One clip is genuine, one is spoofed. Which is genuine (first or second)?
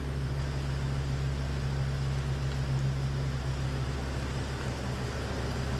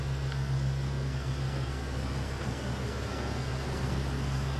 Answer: first